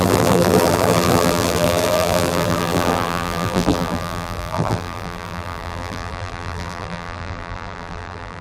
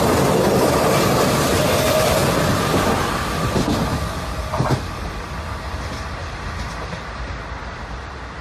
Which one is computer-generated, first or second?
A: first